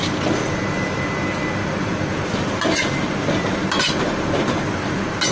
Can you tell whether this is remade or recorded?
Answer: recorded